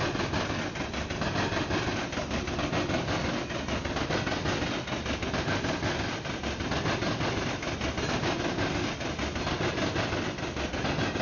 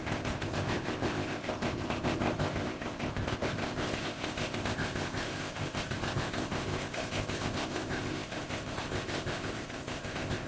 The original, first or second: first